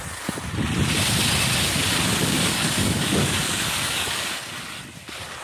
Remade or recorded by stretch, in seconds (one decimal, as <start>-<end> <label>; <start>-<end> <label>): 0.0-2.2 recorded; 2.2-4.3 remade; 4.3-5.4 recorded